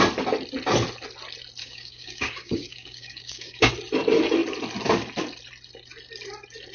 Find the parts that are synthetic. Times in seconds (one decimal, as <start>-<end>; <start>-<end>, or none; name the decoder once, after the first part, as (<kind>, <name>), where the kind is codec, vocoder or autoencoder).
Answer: 1.6-3.7 (codec, DAC)